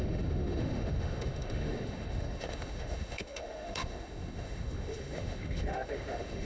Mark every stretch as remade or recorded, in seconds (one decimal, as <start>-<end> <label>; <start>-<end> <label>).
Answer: 0.0-6.4 remade